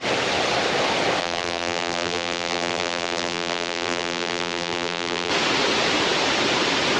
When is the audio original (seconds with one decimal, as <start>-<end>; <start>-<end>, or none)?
0.0-1.2; 5.3-7.0